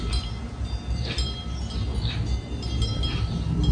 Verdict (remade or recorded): remade